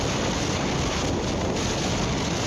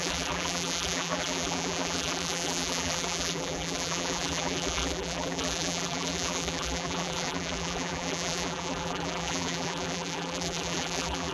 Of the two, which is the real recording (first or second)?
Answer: first